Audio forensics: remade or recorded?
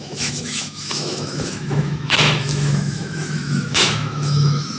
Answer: remade